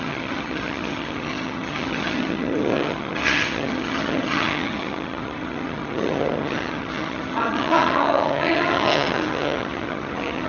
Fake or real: fake